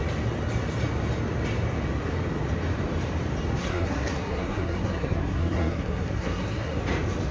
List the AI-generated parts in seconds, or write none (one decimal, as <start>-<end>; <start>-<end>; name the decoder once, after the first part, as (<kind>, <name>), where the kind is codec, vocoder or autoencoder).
3.6-6.8 (codec, SNAC)